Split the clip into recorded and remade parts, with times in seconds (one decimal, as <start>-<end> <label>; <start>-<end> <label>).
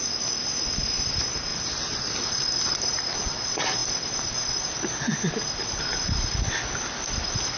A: 0.0-7.6 recorded